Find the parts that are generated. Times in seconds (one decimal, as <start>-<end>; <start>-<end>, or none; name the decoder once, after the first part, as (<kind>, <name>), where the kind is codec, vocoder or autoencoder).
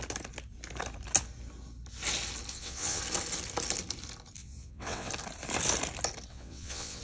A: 2.5-3.0 (vocoder, WaveNeXt); 4.4-5.1; 6.3-7.0